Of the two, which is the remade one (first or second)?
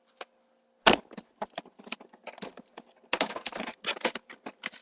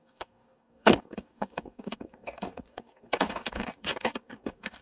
second